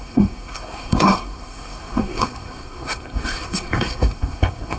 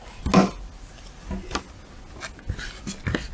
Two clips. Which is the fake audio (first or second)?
first